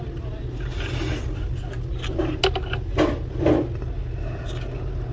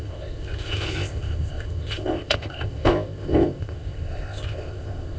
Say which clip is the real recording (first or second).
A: first